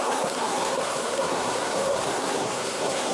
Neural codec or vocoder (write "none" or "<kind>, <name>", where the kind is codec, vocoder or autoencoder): codec, SNAC